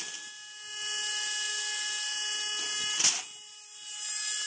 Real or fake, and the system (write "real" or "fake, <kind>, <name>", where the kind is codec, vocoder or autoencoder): real